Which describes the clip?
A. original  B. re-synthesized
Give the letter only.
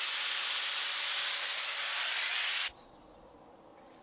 A